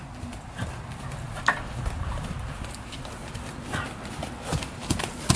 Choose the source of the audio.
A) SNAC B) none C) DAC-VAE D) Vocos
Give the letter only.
B